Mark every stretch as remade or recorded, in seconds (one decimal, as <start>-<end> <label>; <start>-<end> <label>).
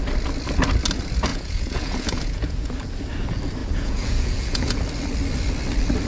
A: 0.0-1.3 recorded; 1.3-2.7 remade; 2.7-3.6 recorded; 3.6-4.8 remade; 4.8-6.1 recorded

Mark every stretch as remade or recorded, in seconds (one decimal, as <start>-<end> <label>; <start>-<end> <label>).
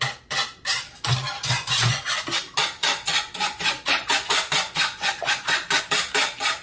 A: 0.0-1.3 recorded; 1.3-2.2 remade; 2.2-2.8 recorded; 2.8-5.8 remade; 5.8-6.6 recorded